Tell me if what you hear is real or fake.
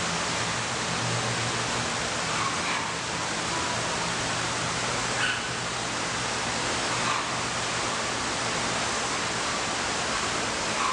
real